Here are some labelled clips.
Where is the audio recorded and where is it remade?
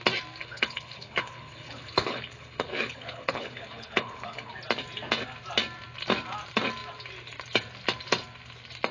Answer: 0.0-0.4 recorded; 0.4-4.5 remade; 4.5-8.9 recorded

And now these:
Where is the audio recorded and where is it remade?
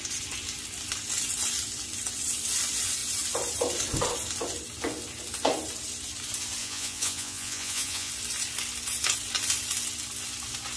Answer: 0.0-6.6 recorded; 6.6-8.1 remade; 8.1-10.8 recorded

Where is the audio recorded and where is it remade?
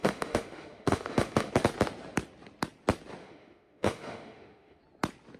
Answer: 0.0-1.5 remade; 1.5-3.2 recorded; 3.2-4.8 remade; 4.8-5.4 recorded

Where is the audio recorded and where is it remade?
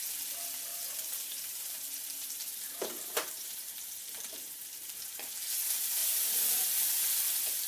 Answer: 0.0-0.7 recorded; 0.7-5.3 remade; 5.3-7.7 recorded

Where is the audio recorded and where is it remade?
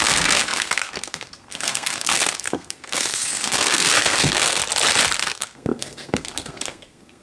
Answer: 0.0-4.6 remade; 4.6-5.2 recorded; 5.2-7.2 remade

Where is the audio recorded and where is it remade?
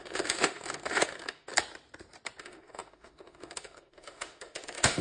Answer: 0.0-1.5 remade; 1.5-2.4 recorded; 2.4-5.0 remade